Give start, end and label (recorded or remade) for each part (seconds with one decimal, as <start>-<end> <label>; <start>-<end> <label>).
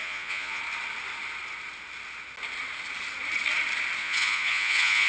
0.0-0.6 remade; 0.6-4.0 recorded; 4.0-5.1 remade